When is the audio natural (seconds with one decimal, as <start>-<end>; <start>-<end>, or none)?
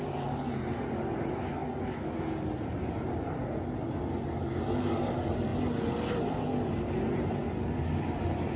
1.6-4.8; 5.5-6.1; 7.4-7.9